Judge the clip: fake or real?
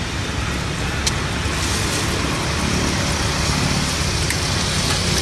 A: real